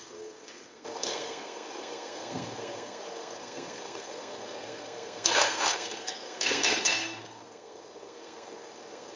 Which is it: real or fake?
fake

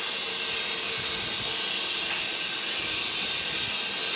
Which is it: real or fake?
real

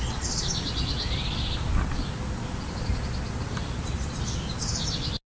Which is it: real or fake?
real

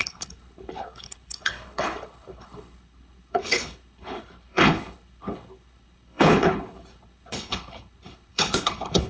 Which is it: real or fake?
fake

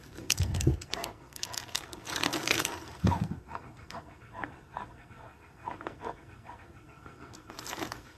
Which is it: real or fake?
fake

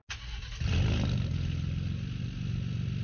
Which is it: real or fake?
real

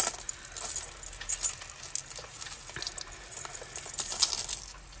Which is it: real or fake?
real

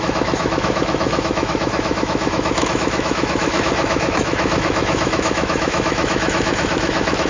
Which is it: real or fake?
fake